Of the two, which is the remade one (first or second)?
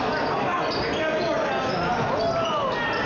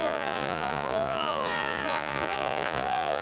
second